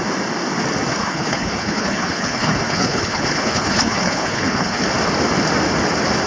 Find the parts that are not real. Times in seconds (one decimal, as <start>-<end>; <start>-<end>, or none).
1.0-4.8